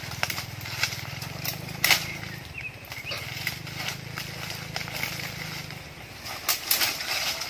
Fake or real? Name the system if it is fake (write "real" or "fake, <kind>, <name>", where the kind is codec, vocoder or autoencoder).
fake, vocoder, BigVGAN v2